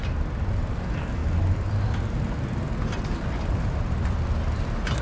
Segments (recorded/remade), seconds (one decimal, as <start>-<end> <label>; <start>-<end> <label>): 0.0-5.0 recorded